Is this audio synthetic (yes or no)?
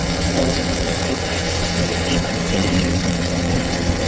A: yes